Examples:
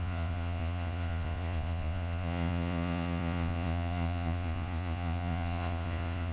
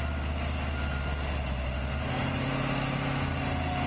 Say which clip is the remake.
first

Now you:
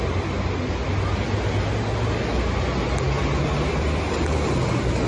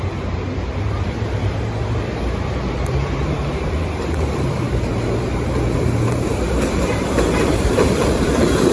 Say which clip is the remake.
second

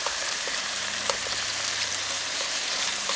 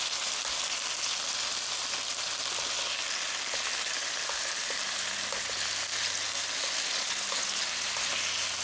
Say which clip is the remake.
first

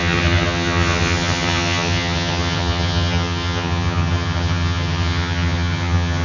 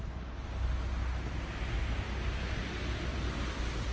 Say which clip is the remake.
first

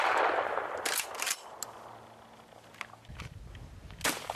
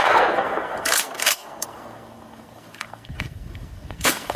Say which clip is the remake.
second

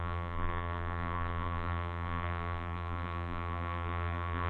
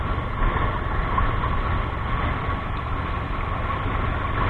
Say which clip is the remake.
first